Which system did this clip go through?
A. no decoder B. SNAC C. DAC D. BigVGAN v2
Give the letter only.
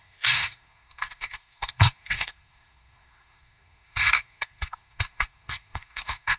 B